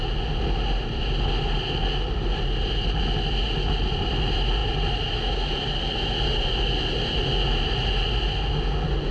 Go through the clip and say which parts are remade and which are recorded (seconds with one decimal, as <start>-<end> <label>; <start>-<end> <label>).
0.0-9.1 recorded